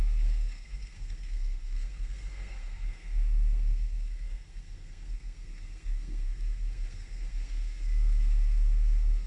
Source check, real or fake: fake